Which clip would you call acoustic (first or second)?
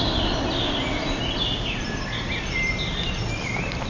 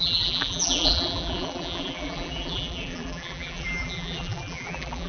first